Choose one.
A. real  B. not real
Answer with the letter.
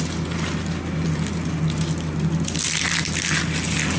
A